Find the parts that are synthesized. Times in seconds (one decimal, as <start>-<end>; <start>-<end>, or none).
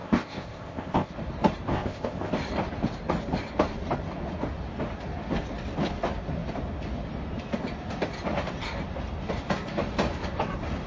0.0-1.1; 1.7-2.3